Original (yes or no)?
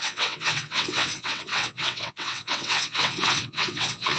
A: no